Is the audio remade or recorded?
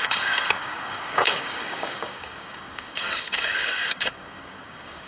remade